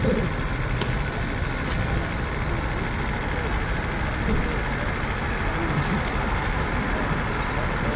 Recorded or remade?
recorded